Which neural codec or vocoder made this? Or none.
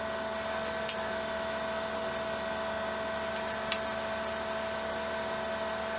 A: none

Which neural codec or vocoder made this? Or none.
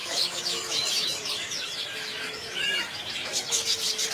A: autoencoder, DAC-VAE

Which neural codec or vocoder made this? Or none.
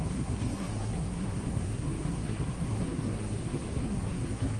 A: codec, SNAC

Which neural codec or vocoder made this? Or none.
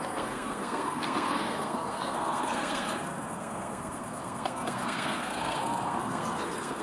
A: codec, SNAC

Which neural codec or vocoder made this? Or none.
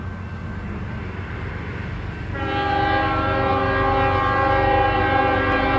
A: none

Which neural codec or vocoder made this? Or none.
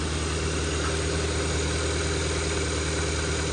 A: none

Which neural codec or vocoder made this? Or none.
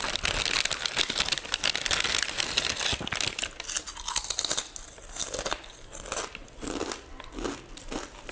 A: none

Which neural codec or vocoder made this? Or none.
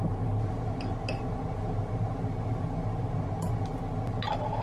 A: none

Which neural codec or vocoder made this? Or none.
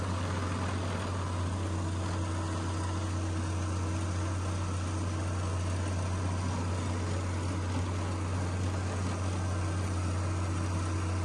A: none